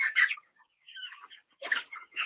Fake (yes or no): yes